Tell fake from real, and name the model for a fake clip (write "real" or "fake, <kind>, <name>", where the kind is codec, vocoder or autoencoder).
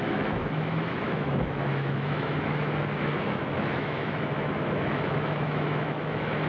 fake, autoencoder, DAC-VAE